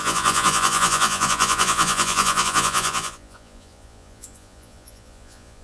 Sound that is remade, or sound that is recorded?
remade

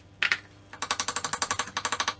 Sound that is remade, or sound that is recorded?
recorded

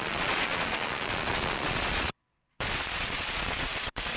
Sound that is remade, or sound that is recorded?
remade